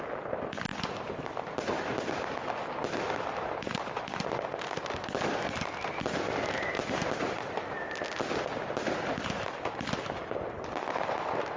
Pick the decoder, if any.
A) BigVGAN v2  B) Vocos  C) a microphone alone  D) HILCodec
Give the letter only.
C